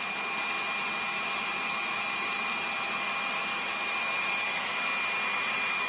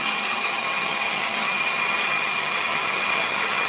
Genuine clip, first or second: first